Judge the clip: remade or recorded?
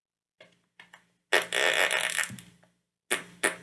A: recorded